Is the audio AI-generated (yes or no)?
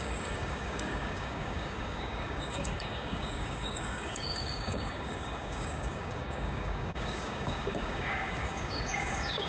yes